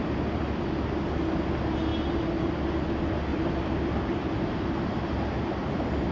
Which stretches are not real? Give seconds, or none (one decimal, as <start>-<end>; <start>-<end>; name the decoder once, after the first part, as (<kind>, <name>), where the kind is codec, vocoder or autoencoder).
3.3-5.0 (vocoder, BigVGAN v2)